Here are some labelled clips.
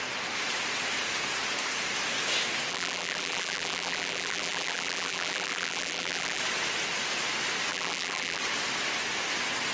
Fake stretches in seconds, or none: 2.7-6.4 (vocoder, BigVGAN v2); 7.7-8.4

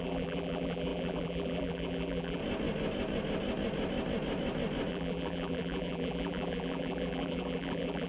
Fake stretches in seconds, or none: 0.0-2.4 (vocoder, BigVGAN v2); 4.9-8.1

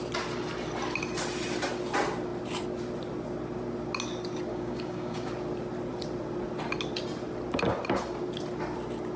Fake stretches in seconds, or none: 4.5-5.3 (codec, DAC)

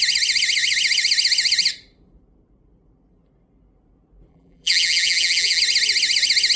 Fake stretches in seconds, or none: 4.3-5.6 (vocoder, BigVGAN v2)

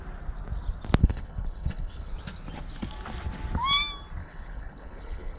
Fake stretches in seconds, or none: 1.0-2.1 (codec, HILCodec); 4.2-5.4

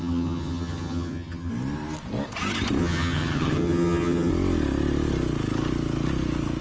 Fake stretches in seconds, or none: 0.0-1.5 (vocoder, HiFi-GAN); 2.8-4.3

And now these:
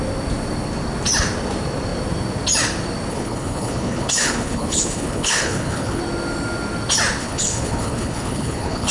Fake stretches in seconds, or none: 3.1-6.0 (codec, HILCodec); 7.2-8.9

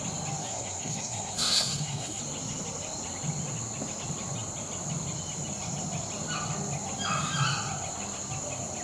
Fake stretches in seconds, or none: 0.4-2.2 (codec, SNAC)